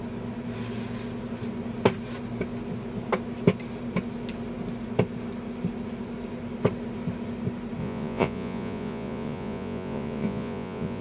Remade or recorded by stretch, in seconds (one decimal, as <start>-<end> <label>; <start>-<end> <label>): 0.0-7.8 recorded; 7.8-11.0 remade